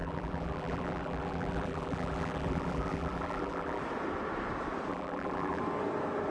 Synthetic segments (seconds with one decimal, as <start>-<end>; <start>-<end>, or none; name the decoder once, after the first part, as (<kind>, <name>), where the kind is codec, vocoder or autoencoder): 0.0-3.8 (vocoder, BigVGAN v2); 4.9-5.6